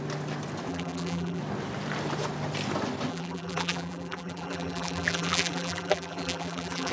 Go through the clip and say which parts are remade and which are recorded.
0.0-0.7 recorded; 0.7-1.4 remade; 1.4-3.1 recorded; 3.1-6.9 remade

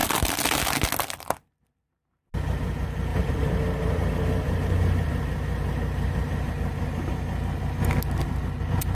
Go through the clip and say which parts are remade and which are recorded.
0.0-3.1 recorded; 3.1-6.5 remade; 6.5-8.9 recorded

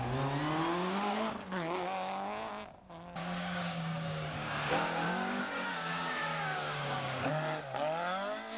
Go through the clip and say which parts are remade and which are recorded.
0.0-0.7 recorded; 0.7-2.5 remade; 2.5-3.2 recorded; 3.2-7.3 remade; 7.3-8.6 recorded

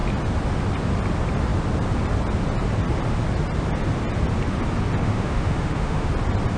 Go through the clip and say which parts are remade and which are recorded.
0.0-5.0 recorded; 5.0-6.1 remade; 6.1-6.6 recorded

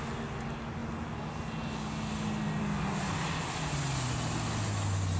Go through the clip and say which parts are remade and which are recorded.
0.0-5.2 recorded

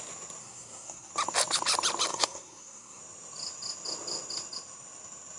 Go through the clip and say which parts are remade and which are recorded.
0.0-0.4 recorded; 0.4-1.1 remade; 1.1-2.1 recorded; 2.1-3.0 remade; 3.0-5.4 recorded